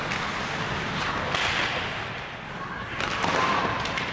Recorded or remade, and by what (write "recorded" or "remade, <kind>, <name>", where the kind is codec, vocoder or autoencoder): recorded